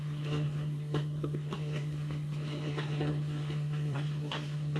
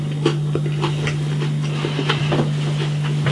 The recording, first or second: second